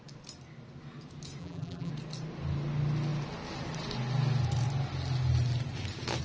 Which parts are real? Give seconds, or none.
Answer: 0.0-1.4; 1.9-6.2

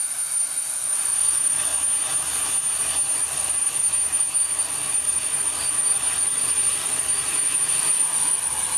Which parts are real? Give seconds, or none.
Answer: 1.7-3.2